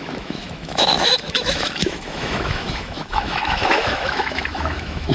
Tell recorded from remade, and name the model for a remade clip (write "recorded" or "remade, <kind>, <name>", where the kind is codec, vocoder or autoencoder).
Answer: remade, autoencoder, DAC-VAE